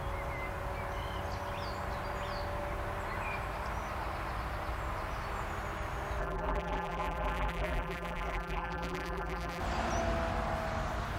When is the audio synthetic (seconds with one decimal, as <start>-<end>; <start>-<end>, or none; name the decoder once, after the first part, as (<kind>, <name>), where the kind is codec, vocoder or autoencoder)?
6.2-9.6 (vocoder, BigVGAN v2)